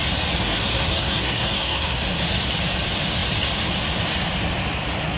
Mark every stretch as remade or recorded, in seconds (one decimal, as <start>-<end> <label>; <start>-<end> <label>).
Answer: 0.0-0.4 recorded; 0.4-2.1 remade; 2.1-5.2 recorded